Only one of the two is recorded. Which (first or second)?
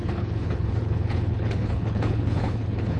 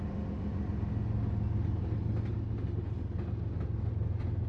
second